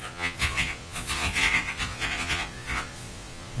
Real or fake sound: fake